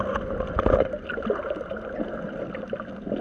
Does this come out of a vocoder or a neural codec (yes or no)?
no